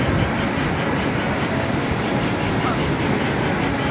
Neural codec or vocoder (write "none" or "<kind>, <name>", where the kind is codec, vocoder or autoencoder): none